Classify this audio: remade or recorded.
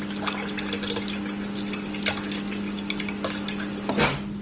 recorded